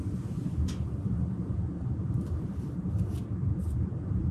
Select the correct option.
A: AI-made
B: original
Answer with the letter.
B